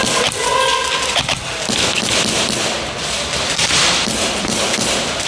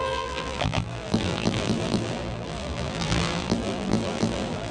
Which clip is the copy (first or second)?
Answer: second